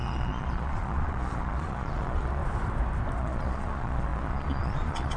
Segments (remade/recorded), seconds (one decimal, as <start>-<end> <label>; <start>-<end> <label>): 0.0-2.4 remade; 2.4-3.2 recorded; 3.2-5.2 remade